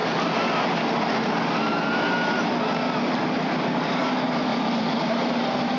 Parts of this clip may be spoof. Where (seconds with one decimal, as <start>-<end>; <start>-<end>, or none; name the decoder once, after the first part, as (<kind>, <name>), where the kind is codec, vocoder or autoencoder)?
4.5-5.8 (vocoder, BigVGAN v2)